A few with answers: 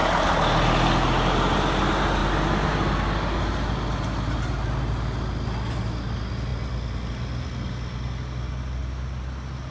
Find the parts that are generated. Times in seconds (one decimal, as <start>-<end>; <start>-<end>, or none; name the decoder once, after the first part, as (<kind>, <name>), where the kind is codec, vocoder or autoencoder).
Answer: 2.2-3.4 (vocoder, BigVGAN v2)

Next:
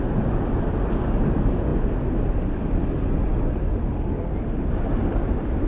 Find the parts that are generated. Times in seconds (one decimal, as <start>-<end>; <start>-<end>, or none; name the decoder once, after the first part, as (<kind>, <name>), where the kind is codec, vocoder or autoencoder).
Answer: none

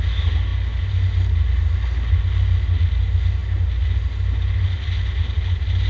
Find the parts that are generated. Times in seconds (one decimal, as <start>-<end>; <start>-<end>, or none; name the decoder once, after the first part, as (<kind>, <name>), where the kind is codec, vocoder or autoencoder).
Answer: none

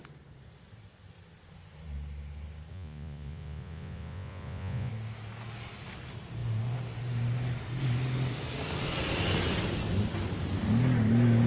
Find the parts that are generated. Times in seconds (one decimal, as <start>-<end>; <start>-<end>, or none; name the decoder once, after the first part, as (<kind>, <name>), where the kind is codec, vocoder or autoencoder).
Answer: 2.7-4.9 (vocoder, Vocos)